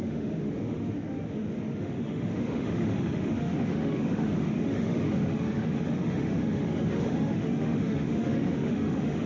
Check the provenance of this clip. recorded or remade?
remade